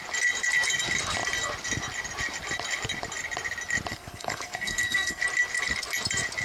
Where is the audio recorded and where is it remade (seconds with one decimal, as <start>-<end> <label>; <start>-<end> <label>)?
0.0-3.9 recorded; 3.9-5.2 remade; 5.2-6.4 recorded